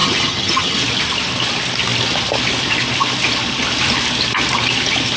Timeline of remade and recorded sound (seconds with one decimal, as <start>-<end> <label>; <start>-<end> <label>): 0.0-0.8 remade; 0.8-5.2 recorded